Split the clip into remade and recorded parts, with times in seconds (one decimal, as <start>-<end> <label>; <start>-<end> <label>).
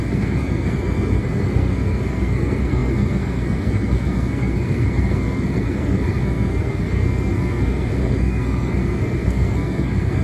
0.0-10.2 remade